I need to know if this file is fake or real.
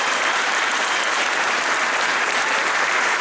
fake